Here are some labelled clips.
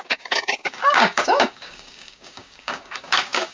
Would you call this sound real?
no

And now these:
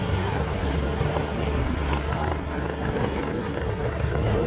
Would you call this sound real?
no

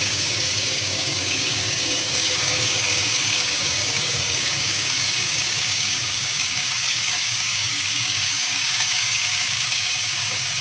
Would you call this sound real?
no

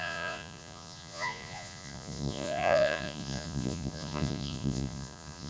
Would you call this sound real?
no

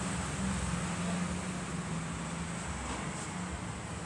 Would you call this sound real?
yes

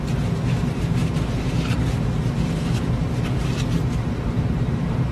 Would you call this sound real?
no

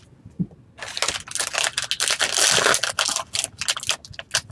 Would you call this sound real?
yes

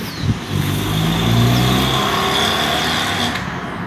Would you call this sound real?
yes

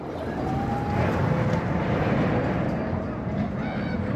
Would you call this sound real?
yes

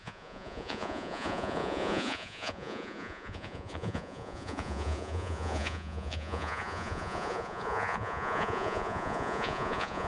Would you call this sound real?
no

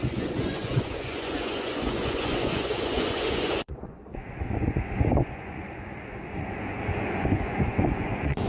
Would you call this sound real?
no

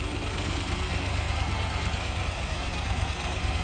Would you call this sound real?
no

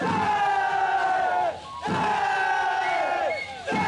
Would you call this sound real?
yes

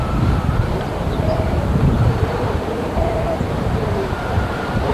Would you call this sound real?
no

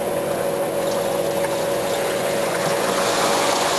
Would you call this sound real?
no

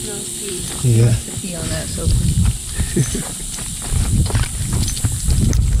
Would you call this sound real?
no